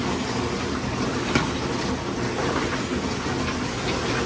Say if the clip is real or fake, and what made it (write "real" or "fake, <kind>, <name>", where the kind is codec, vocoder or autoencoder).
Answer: real